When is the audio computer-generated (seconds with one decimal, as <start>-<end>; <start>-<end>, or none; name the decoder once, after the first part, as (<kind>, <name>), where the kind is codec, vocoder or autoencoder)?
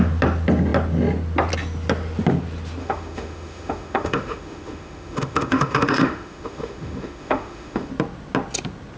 2.8-7.9 (autoencoder, DAC-VAE)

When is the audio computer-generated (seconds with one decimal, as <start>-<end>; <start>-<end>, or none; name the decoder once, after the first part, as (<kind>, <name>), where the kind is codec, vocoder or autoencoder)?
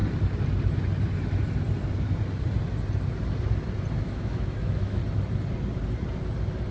4.0-5.0 (autoencoder, DAC-VAE)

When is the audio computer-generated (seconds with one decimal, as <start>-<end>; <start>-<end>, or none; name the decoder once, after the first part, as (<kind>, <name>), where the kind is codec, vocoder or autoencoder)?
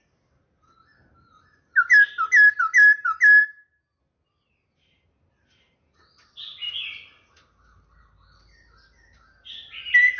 none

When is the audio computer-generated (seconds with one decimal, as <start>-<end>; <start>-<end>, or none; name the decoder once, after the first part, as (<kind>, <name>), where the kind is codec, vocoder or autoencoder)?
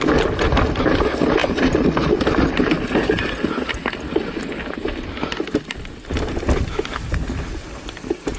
none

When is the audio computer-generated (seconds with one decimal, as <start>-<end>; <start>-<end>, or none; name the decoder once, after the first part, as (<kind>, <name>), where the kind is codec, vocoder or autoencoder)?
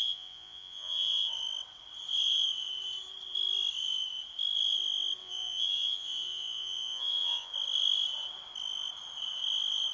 0.0-1.3 (vocoder, Vocos); 5.2-7.5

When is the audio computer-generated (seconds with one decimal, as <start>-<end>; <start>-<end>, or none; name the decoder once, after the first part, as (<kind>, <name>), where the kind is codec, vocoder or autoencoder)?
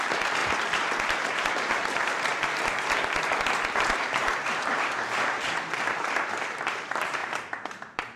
0.0-0.4 (vocoder, BigVGAN v2); 1.3-2.3; 3.8-8.2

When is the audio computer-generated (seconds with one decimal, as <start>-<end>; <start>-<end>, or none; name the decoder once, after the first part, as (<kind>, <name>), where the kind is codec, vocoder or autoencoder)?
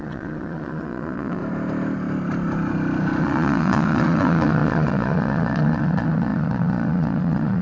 0.0-1.4 (vocoder, Vocos); 3.2-7.6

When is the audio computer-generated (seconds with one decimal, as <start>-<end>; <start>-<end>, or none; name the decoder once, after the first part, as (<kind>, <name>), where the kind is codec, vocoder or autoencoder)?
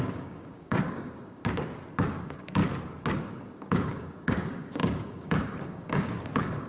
0.0-1.4 (codec, DAC); 2.2-2.6; 3.2-6.7